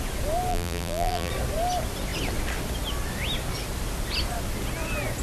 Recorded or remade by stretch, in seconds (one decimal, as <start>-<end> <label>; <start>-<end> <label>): 0.0-0.5 recorded; 0.5-1.3 remade; 1.3-5.2 recorded